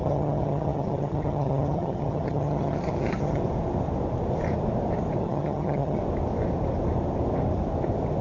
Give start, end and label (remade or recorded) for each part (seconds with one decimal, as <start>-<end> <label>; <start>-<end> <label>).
0.0-3.4 remade; 3.4-5.2 recorded; 5.2-6.0 remade; 6.0-8.2 recorded